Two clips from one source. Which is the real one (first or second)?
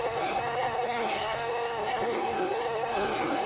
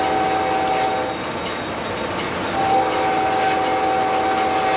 second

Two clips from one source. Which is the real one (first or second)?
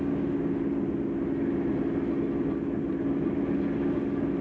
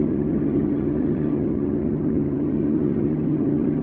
first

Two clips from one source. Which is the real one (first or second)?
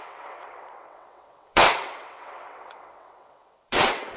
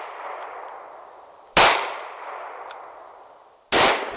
second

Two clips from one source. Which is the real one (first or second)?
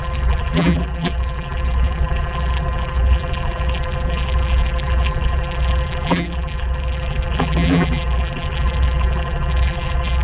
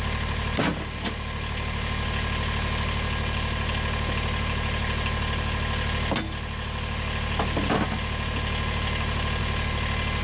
second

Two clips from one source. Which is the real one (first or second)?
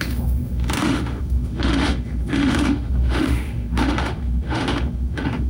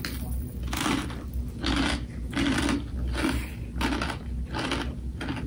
second